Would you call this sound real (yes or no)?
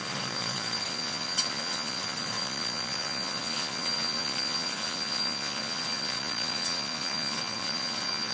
no